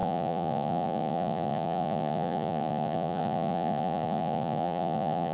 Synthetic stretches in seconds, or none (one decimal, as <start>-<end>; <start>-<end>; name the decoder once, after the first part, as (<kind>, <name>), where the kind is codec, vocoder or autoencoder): 0.0-5.3 (vocoder, Vocos)

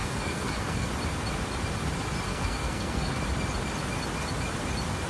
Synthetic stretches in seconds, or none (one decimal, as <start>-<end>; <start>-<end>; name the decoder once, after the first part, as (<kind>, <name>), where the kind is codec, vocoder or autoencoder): 0.0-0.9 (codec, SNAC); 2.3-3.2

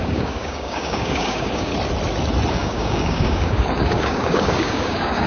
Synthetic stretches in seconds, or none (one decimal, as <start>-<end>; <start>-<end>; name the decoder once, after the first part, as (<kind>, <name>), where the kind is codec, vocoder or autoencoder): 0.0-1.7 (codec, DAC); 2.5-5.3

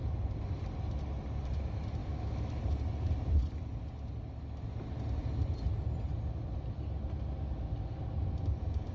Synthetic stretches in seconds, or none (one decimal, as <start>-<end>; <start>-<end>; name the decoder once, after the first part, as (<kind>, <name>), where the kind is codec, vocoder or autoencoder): 2.0-2.6 (autoencoder, DAC-VAE)

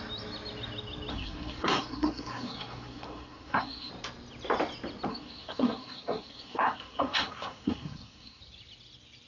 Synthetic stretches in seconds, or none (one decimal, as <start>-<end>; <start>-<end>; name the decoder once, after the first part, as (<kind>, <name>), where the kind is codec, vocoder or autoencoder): 1.1-3.9 (codec, SNAC); 5.1-8.4

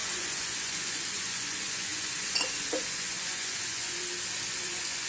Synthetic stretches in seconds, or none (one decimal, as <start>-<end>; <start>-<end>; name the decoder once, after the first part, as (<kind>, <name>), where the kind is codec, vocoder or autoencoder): 0.0-4.0 (vocoder, Vocos); 4.5-5.1